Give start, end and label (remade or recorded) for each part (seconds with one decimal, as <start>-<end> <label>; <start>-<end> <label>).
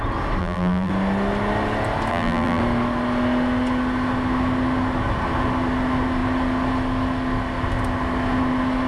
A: 0.0-0.4 recorded; 0.4-0.9 remade; 0.9-2.1 recorded; 2.1-2.6 remade; 2.6-8.9 recorded